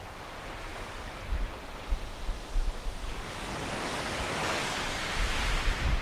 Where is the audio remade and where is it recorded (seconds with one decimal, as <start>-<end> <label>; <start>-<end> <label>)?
0.0-0.7 recorded; 0.7-1.4 remade; 1.4-3.0 recorded; 3.0-5.1 remade; 5.1-6.0 recorded